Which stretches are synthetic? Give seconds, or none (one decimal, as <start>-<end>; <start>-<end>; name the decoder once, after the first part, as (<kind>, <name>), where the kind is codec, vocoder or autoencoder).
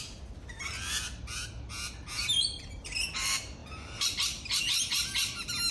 none